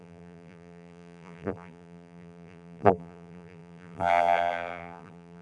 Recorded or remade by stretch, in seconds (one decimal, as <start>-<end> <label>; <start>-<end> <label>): 0.0-5.4 remade